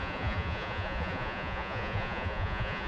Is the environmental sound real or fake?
fake